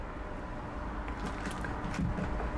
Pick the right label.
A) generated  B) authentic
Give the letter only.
B